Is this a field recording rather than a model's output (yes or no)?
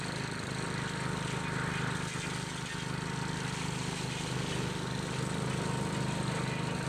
yes